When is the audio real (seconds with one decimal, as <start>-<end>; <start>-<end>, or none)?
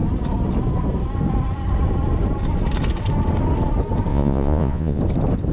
0.0-4.1; 5.0-5.5